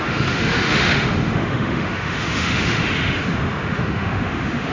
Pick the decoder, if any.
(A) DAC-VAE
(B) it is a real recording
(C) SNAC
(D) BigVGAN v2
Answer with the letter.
A